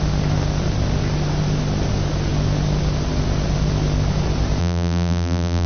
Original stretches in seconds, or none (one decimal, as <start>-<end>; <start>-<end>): 0.0-4.6